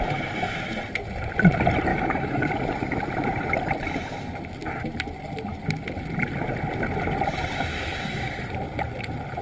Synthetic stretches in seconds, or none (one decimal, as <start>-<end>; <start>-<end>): 1.9-2.5; 7.7-8.3